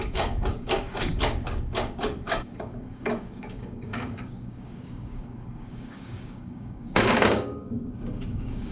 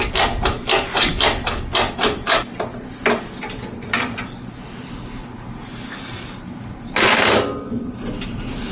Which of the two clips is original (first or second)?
second